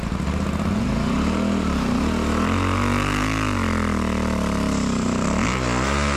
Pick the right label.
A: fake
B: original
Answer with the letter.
B